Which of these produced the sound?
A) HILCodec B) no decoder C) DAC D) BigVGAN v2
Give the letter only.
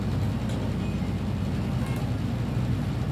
B